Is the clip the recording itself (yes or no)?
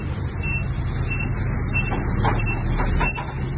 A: yes